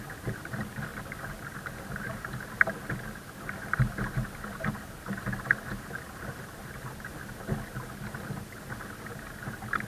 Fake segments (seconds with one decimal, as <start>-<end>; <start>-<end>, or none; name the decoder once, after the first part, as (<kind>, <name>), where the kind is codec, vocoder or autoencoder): none